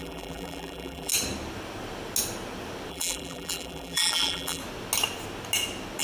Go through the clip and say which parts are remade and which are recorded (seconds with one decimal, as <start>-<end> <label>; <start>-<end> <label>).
0.0-1.1 remade; 1.1-2.9 recorded; 2.9-4.6 remade; 4.6-6.0 recorded